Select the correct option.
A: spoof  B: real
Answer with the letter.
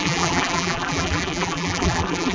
A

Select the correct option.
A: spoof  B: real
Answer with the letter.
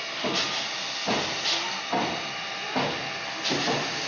B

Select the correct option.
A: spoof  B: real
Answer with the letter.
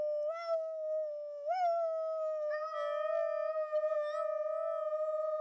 B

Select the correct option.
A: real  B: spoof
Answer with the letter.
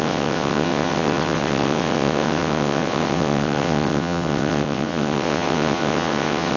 B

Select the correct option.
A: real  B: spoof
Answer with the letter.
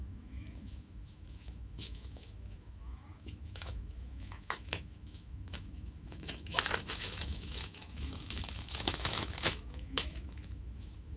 B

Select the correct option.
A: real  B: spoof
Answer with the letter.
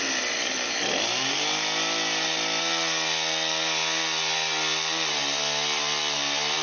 A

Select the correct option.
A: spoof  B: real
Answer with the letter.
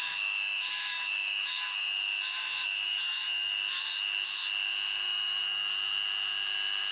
A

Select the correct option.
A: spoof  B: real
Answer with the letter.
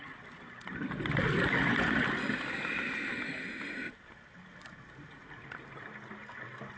B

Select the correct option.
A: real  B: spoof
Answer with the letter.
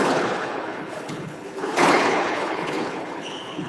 B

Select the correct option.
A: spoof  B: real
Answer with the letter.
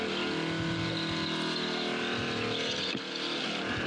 B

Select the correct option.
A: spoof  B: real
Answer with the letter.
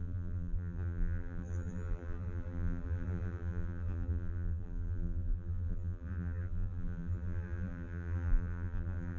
A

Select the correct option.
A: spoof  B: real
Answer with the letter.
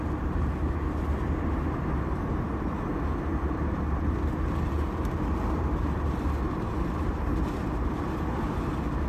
A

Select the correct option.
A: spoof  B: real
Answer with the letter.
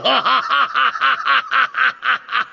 B